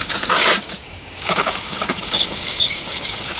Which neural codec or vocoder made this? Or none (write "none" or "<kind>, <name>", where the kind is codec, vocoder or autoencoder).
codec, DAC